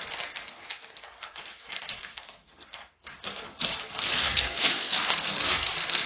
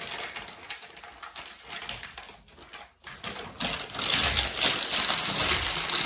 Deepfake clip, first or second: first